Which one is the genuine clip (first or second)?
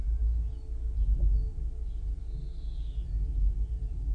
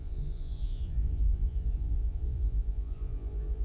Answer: first